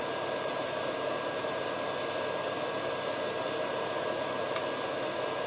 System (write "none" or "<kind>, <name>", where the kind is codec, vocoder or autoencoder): none